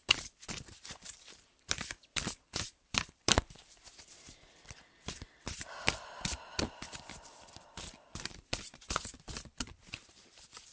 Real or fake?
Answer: fake